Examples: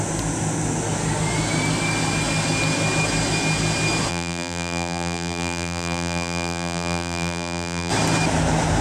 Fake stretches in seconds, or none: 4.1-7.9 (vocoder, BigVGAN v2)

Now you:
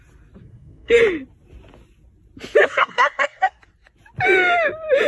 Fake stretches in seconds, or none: 0.4-1.0 (codec, SNAC); 2.6-3.6

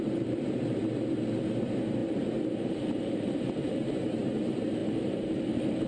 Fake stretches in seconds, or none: 0.0-0.8 (vocoder, BigVGAN v2); 1.6-5.9